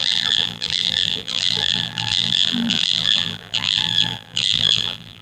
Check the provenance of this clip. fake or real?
fake